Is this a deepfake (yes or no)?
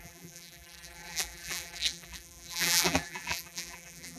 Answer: yes